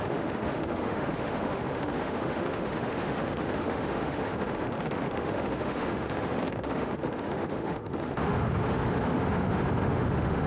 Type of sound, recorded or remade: remade